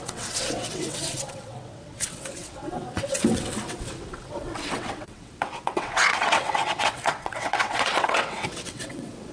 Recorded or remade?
remade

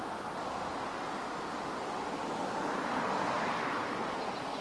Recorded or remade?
recorded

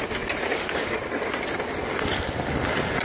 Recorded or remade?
recorded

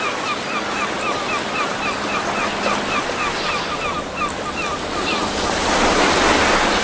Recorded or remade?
recorded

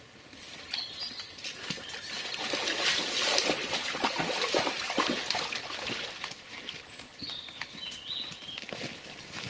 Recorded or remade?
recorded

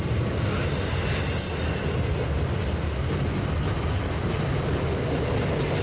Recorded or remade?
recorded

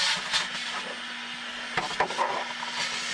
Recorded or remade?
recorded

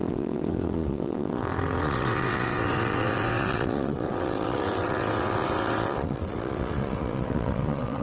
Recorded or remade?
remade